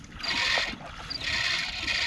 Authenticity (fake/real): real